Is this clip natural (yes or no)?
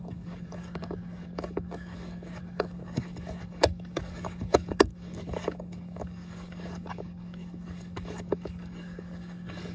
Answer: no